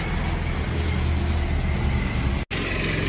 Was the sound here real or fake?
real